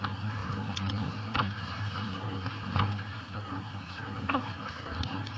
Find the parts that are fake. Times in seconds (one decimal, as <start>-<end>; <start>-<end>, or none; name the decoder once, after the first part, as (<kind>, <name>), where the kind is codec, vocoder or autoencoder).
0.0-5.4 (codec, SNAC)